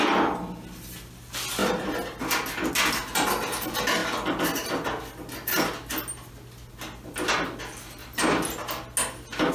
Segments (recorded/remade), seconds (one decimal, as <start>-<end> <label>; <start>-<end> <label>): 0.0-9.5 recorded